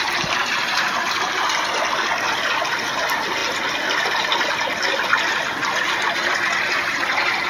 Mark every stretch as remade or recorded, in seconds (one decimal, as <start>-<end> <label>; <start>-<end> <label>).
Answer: 0.0-7.5 recorded